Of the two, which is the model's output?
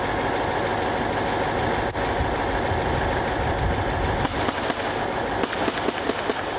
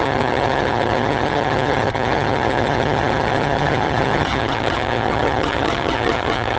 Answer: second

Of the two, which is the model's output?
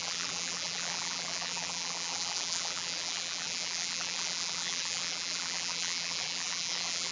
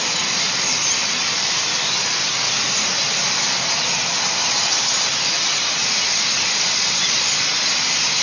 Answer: first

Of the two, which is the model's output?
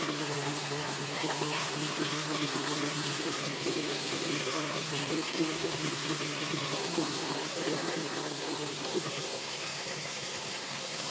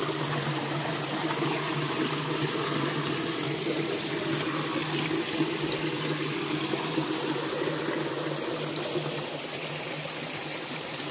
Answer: first